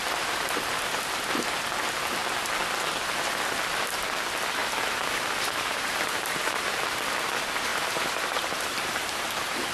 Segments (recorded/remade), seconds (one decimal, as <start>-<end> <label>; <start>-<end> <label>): 0.0-4.6 recorded; 4.6-7.0 remade; 7.0-7.7 recorded; 7.7-9.7 remade